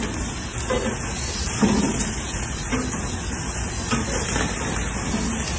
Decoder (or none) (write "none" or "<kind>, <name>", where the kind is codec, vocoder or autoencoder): none